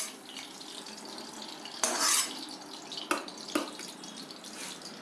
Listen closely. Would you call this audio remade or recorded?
recorded